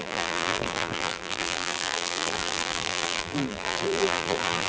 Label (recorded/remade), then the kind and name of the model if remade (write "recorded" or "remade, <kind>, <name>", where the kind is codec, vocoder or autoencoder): remade, vocoder, BigVGAN v2